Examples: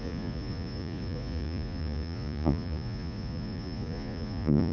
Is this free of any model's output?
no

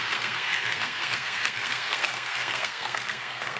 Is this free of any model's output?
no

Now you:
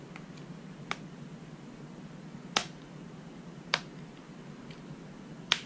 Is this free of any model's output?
yes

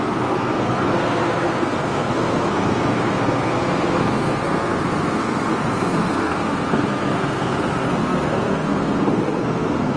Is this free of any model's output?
no